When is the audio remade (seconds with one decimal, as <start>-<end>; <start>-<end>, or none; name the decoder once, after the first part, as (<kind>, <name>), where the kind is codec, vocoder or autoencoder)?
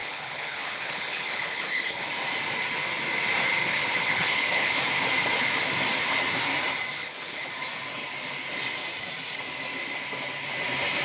0.0-2.1 (codec, HILCodec); 3.6-4.8; 7.0-7.5